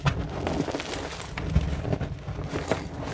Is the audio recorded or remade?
recorded